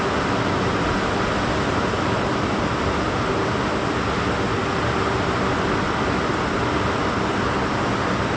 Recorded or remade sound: recorded